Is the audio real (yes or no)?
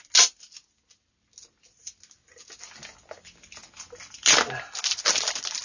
yes